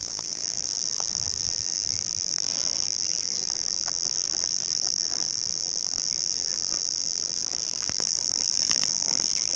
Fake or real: fake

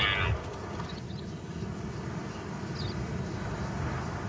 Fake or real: real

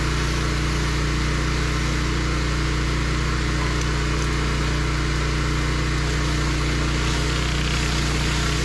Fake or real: real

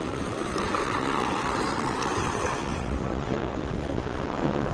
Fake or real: fake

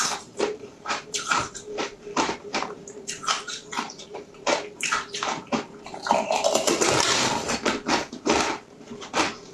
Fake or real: fake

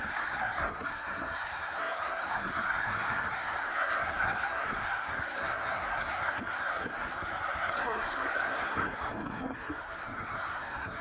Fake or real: fake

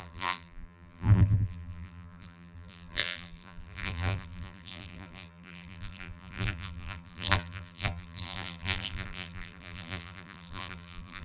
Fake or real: fake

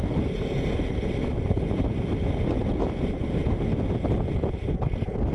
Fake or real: real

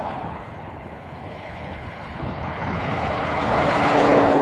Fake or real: fake